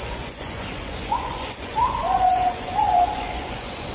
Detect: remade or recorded remade